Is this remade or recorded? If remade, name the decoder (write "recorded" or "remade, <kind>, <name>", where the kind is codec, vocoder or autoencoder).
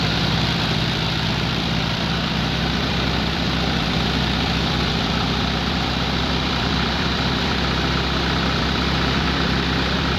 remade, vocoder, BigVGAN v2